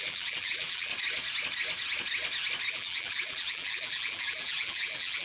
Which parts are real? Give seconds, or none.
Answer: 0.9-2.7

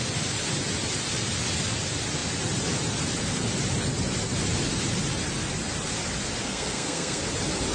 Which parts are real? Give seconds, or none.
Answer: 0.0-6.4; 7.2-7.7

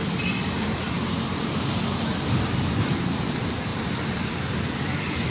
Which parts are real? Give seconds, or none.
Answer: none